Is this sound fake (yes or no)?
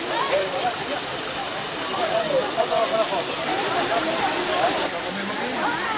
no